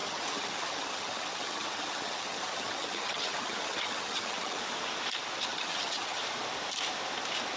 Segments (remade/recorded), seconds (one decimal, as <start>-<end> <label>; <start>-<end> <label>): 0.0-4.6 remade; 4.6-5.5 recorded; 5.5-6.2 remade; 6.2-7.6 recorded